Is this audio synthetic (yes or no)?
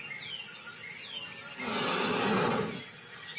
no